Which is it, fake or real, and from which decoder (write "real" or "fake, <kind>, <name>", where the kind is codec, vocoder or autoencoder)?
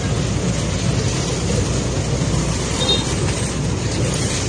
real